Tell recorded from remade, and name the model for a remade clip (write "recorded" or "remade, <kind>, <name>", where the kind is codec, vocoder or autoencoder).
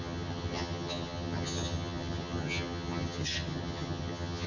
remade, vocoder, HiFi-GAN